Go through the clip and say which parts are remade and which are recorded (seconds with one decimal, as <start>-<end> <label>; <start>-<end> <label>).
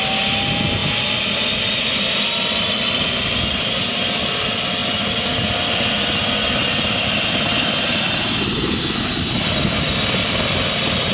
0.0-11.1 recorded